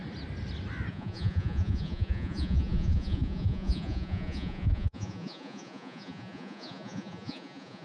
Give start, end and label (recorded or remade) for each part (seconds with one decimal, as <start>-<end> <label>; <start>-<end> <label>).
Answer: 0.0-0.9 recorded; 0.9-7.8 remade